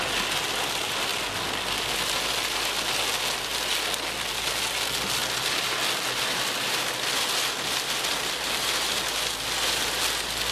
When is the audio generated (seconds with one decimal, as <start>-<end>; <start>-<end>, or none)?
none